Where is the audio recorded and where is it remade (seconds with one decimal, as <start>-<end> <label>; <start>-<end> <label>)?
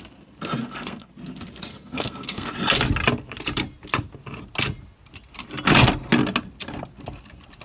0.0-0.6 recorded; 0.6-1.1 remade; 1.1-1.7 recorded; 1.7-2.5 remade; 2.5-7.6 recorded